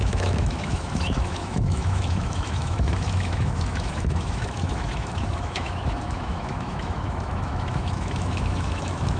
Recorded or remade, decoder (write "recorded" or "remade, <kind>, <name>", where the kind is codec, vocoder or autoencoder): remade, autoencoder, DAC-VAE